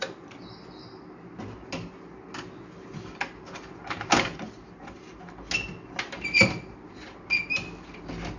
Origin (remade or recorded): recorded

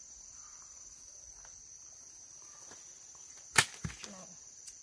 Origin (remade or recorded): recorded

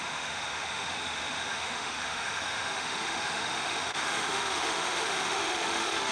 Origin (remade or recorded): remade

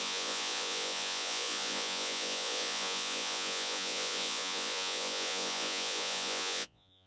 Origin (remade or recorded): remade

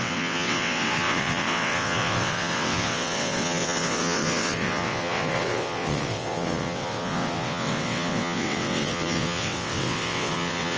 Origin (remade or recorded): remade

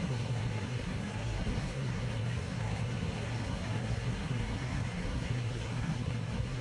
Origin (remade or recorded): remade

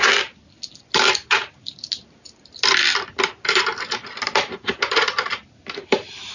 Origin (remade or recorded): recorded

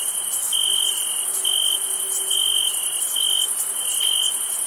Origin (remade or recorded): recorded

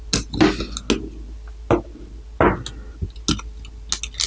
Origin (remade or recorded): recorded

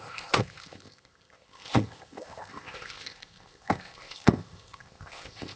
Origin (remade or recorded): remade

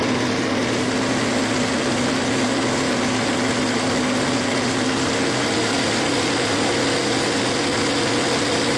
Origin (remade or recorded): recorded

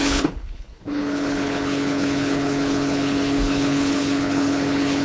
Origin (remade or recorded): remade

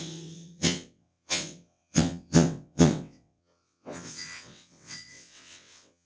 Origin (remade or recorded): remade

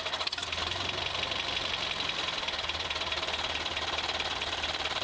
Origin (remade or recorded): recorded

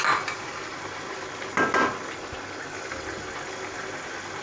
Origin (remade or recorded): recorded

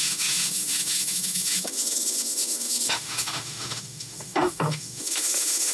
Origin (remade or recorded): remade